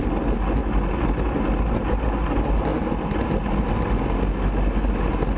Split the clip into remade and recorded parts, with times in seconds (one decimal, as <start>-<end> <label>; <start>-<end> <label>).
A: 0.0-5.4 recorded